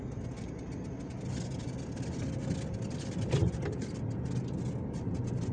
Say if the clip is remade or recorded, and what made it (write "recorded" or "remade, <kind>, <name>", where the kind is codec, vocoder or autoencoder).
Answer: recorded